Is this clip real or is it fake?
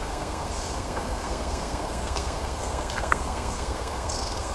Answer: fake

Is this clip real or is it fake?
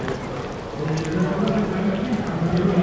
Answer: real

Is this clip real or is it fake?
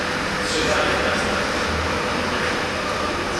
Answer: real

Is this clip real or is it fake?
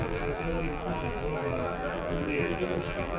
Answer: fake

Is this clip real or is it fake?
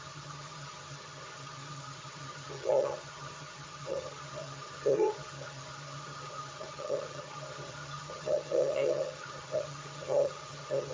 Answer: fake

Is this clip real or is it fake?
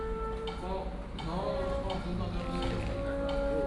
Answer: real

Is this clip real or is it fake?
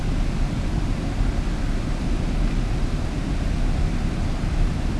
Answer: real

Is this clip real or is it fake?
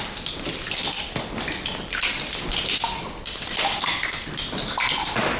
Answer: real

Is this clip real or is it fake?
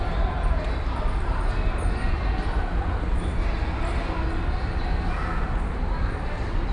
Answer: real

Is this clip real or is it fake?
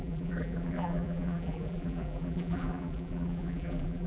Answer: fake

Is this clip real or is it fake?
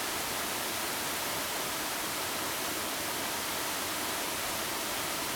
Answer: real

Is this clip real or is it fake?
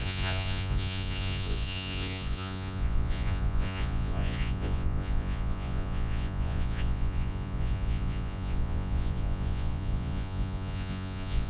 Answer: fake